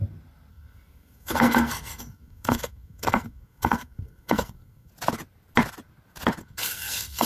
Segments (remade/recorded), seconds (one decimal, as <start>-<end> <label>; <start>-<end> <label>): 0.0-0.5 recorded; 0.5-4.9 remade; 4.9-6.4 recorded; 6.4-7.3 remade